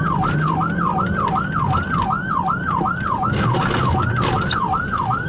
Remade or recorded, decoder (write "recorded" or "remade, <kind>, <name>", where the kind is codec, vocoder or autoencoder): recorded